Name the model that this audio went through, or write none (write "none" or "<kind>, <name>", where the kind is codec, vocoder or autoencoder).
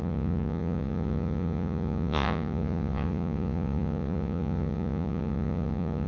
vocoder, Vocos